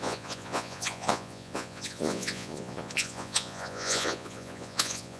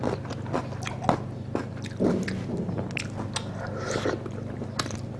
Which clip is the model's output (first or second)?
first